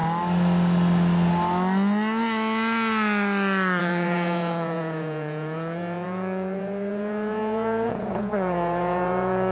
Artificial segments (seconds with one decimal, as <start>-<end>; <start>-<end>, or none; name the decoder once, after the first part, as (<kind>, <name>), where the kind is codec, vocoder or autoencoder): 3.8-9.5 (vocoder, Vocos)